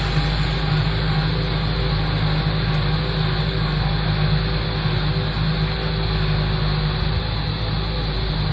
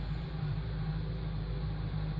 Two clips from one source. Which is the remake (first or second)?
second